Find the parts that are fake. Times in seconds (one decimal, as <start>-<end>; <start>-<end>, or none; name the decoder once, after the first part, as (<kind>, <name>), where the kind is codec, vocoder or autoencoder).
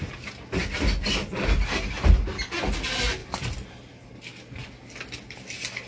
3.2-4.1 (vocoder, BigVGAN v2)